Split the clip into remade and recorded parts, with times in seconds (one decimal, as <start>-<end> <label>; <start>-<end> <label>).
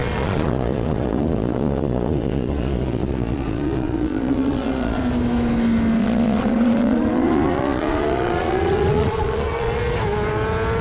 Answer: 0.0-5.0 remade; 5.0-6.0 recorded; 6.0-9.8 remade; 9.8-10.8 recorded